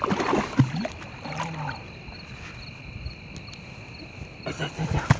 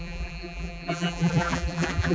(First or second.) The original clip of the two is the first